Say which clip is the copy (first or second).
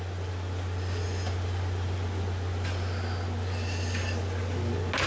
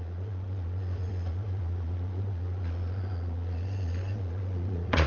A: second